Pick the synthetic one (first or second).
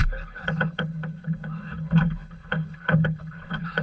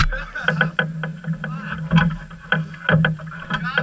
first